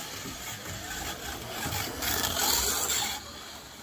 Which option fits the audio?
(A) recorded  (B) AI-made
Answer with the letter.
A